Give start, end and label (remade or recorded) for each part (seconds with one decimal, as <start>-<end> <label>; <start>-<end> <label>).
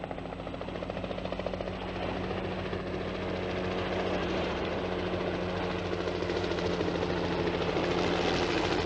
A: 0.0-4.2 recorded; 4.2-4.8 remade; 4.8-8.9 recorded